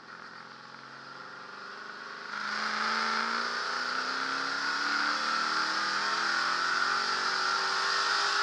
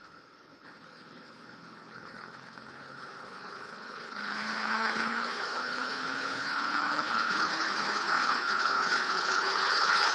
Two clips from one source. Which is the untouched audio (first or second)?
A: first